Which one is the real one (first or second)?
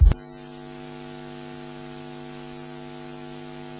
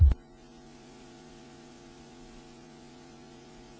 first